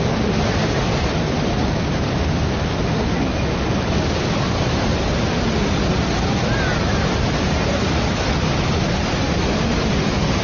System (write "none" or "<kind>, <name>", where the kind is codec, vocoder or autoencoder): none